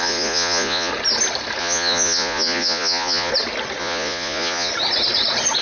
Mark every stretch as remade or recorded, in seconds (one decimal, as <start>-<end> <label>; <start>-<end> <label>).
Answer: 0.0-0.9 remade; 0.9-1.6 recorded; 1.6-3.3 remade; 3.3-3.8 recorded; 3.8-4.7 remade; 4.7-5.6 recorded